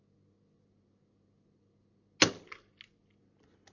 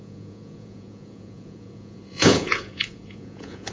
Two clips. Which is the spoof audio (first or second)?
second